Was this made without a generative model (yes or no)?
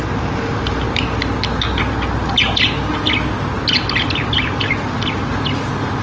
yes